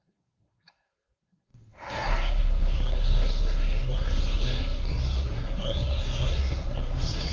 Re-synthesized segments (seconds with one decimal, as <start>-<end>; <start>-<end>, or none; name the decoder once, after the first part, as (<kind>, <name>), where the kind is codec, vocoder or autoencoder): 0.0-7.3 (codec, SNAC)